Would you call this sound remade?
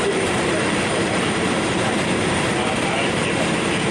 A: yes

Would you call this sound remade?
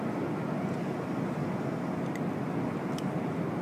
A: no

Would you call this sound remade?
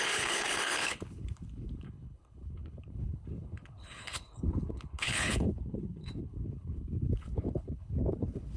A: yes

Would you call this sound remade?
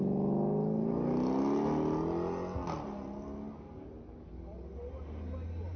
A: no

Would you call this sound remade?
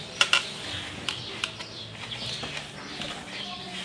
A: no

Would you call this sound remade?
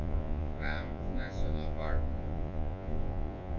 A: yes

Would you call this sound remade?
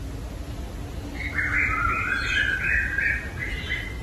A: no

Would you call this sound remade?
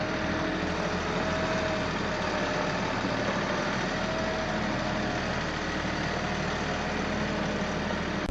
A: no